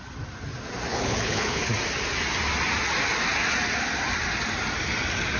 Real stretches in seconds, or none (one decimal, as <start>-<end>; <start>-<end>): 0.0-0.9; 1.7-5.4